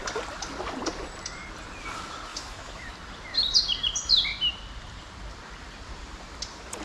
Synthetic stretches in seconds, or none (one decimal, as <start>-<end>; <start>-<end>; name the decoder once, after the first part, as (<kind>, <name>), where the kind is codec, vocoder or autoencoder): 2.3-2.9 (autoencoder, DAC-VAE)